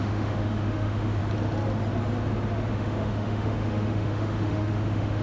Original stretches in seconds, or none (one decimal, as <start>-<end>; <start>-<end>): 1.2-2.7